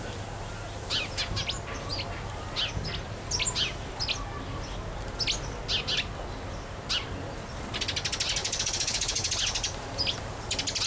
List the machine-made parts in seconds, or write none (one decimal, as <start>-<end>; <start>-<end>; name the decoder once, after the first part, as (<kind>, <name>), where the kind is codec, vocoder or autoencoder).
8.4-9.3 (autoencoder, DAC-VAE)